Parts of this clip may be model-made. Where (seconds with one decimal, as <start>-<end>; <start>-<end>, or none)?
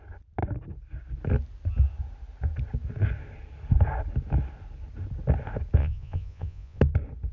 5.8-6.8